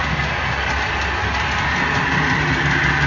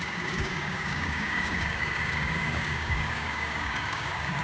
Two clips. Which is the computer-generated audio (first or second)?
second